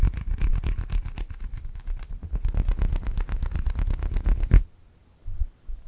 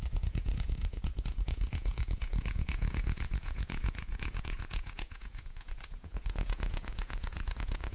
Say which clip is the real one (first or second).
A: first